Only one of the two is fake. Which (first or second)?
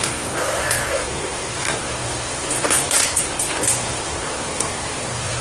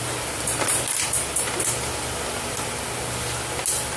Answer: first